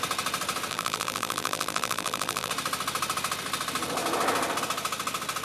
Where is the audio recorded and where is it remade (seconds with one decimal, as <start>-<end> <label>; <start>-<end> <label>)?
0.0-0.7 recorded; 0.7-2.5 remade; 2.5-5.4 recorded